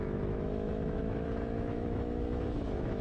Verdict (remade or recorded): remade